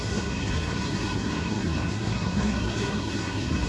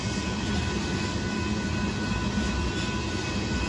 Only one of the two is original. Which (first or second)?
second